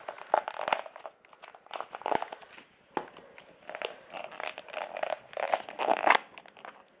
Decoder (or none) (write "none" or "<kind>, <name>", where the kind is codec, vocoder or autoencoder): none